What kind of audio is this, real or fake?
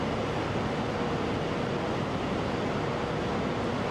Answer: real